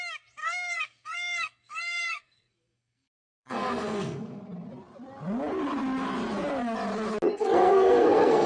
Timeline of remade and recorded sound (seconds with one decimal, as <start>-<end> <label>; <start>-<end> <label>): 0.0-0.4 recorded; 0.4-4.4 remade; 4.4-7.3 recorded; 7.3-8.5 remade